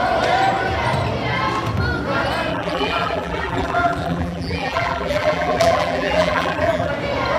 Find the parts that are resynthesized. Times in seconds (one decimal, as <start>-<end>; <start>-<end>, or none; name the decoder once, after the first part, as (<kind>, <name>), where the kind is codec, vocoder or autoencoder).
2.5-6.9 (vocoder, BigVGAN v2)